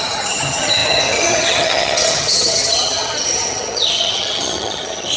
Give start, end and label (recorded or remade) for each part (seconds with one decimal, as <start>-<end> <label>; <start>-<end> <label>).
0.0-5.2 remade